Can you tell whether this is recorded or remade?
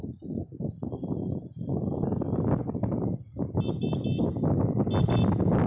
recorded